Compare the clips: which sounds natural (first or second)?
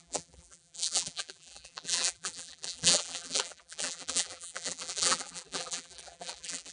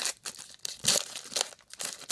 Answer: second